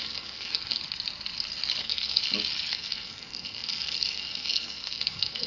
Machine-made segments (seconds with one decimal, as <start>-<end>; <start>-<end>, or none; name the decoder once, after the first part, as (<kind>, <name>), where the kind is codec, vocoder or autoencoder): 0.0-0.8 (codec, SNAC); 1.8-2.2; 2.7-5.5

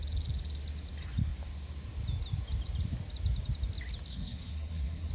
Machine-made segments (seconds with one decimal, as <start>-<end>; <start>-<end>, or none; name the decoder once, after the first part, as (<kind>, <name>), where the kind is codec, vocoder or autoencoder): 4.1-5.1 (codec, SNAC)

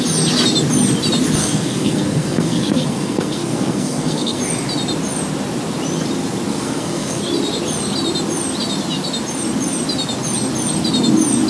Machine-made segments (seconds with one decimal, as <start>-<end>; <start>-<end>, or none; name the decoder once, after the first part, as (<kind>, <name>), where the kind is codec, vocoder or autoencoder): 1.4-4.4 (codec, SNAC); 6.5-7.2

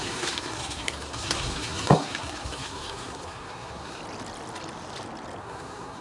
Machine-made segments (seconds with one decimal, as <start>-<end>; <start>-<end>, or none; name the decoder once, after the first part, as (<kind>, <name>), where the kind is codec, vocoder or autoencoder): 0.0-4.0 (codec, SNAC); 5.4-6.0

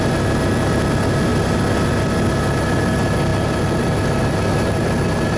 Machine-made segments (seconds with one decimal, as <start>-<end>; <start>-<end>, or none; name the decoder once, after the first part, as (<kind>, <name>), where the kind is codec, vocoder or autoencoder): none

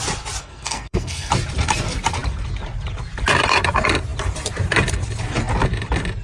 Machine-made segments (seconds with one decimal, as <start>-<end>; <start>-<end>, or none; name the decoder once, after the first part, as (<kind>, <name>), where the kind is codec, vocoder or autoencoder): 0.4-1.3 (codec, SNAC)

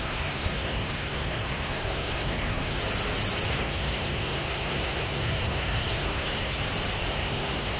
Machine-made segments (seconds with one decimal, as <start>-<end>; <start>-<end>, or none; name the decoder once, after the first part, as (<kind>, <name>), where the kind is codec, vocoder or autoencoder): 0.0-2.8 (codec, SNAC); 3.5-6.6; 7.1-7.8

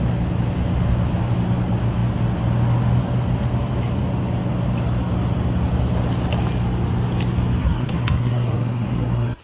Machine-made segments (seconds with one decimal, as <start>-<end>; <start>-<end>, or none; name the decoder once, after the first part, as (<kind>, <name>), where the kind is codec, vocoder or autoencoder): 7.6-9.4 (codec, SNAC)